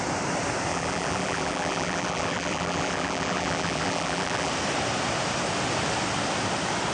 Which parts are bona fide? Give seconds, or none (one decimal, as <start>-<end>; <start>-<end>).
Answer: 0.0-0.7; 4.5-6.9